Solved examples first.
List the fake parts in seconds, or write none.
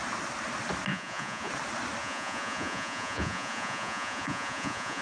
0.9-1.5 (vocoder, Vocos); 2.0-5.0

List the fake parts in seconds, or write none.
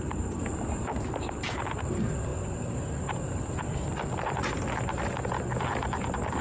none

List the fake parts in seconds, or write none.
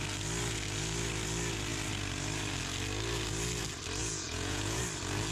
4.0-4.8 (vocoder, Vocos)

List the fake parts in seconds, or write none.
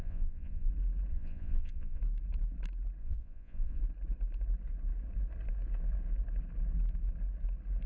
0.0-0.7 (vocoder, Vocos); 1.1-2.0; 3.0-3.8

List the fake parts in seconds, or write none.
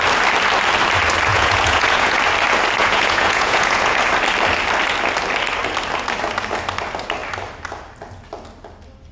1.3-2.2 (vocoder, Vocos); 2.8-4.0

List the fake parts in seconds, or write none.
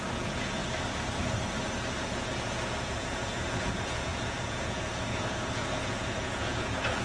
0.0-0.6 (vocoder, Vocos); 1.9-7.0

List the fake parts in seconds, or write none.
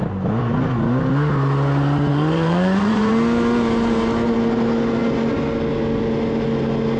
2.1-3.1 (vocoder, Vocos)